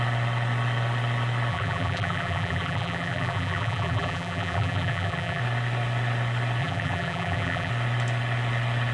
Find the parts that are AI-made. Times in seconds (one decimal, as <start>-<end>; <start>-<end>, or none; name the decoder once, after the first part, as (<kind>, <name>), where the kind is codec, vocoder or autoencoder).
1.5-5.4 (vocoder, BigVGAN v2); 6.6-7.7